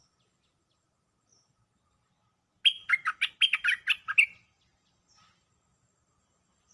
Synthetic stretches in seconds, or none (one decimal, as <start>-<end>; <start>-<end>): none